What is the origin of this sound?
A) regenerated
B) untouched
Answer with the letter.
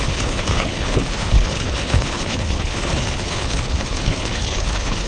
A